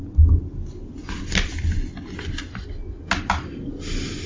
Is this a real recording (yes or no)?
yes